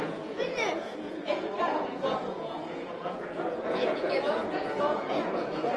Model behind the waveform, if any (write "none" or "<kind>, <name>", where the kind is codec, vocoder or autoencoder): vocoder, Vocos